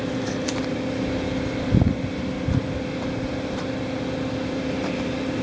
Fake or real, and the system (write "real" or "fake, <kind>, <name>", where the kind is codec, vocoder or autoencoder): real